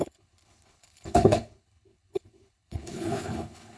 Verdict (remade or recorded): remade